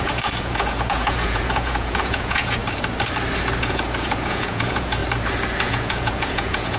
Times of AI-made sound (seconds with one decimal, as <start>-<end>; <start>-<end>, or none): 0.0-2.6; 3.6-5.0; 5.7-6.8